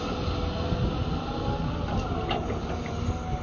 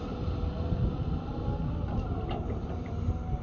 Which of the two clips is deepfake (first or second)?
second